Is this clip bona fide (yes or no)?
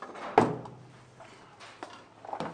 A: yes